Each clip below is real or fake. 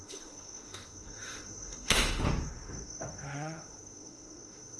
fake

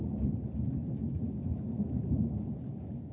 real